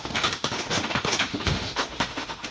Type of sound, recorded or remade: remade